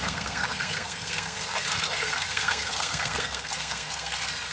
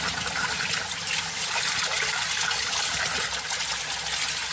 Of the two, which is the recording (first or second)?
second